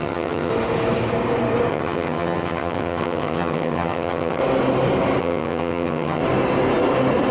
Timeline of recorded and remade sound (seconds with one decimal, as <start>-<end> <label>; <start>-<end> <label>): 0.0-0.5 remade; 0.5-1.7 recorded; 1.7-4.4 remade; 4.4-5.2 recorded; 5.2-6.2 remade; 6.2-7.3 recorded